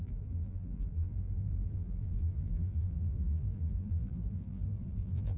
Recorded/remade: remade